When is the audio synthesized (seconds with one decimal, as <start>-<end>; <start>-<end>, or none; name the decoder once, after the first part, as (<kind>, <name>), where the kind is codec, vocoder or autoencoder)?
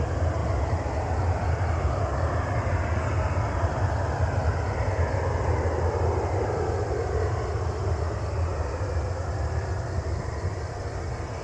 none